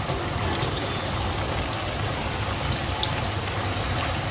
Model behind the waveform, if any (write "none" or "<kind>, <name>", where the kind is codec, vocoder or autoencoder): none